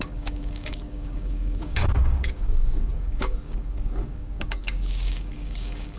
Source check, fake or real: fake